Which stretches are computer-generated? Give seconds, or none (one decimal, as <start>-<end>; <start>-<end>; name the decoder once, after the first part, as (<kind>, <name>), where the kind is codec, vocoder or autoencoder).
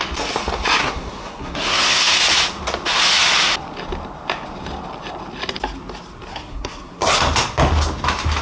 0.8-2.2 (codec, SNAC); 6.3-7.1